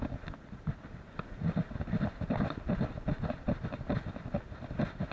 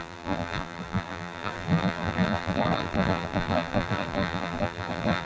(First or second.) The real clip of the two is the first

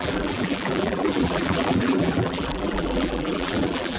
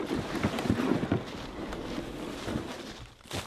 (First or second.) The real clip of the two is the second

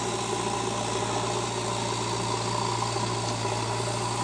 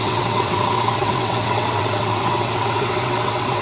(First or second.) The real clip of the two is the first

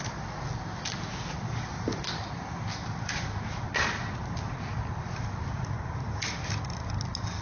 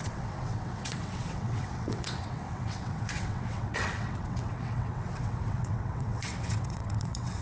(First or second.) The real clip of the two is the first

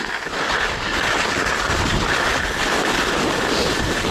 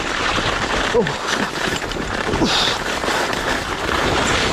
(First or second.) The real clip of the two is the first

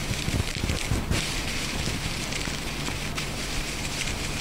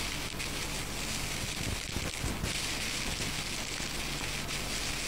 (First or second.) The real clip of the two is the second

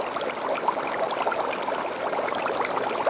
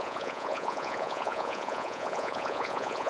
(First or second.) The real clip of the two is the first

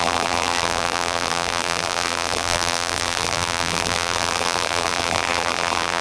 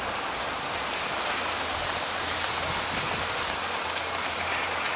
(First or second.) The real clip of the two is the second